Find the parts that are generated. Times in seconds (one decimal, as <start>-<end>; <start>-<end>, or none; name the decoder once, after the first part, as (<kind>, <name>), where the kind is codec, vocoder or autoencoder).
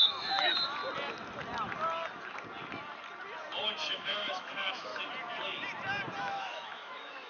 0.0-0.8 (autoencoder, DAC-VAE); 3.9-4.9; 6.2-7.3